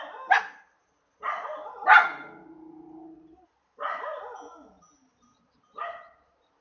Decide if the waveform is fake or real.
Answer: real